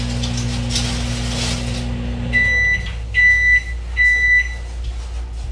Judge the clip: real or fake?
real